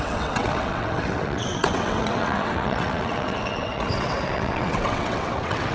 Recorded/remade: remade